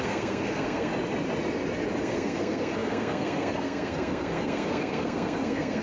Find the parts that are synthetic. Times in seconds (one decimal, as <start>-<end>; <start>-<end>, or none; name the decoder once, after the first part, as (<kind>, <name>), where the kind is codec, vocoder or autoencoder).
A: 0.0-0.9 (codec, SNAC); 2.0-5.8